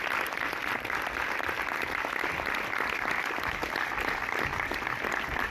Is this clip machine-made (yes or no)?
no